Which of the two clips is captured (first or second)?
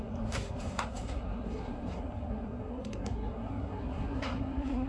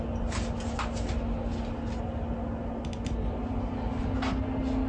second